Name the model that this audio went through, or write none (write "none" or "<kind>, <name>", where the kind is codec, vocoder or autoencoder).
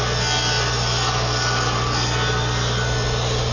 none